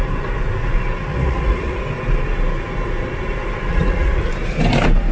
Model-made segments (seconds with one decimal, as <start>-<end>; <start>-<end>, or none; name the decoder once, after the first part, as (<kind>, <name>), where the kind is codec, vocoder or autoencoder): 1.1-1.8 (vocoder, Vocos); 3.7-4.3